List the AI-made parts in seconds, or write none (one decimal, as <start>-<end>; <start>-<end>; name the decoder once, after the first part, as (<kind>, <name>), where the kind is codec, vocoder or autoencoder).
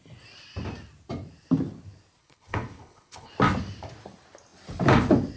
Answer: 2.2-3.3 (codec, HILCodec)